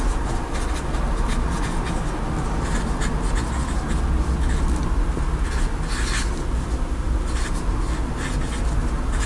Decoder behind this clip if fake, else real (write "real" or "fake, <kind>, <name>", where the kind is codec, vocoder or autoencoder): real